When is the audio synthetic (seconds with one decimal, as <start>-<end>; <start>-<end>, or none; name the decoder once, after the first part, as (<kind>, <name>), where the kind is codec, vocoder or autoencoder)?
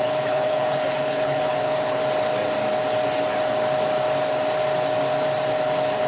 0.0-2.0 (codec, HILCodec)